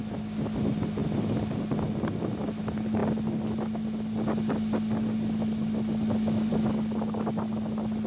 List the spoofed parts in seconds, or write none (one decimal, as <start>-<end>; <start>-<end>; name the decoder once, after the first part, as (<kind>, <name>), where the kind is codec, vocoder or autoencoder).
none